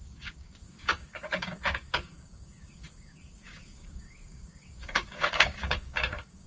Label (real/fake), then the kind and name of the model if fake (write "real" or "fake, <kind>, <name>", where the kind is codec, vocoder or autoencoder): fake, codec, DAC